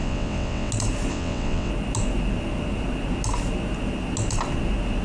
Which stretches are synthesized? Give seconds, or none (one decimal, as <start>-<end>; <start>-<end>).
0.0-0.7; 1.1-1.7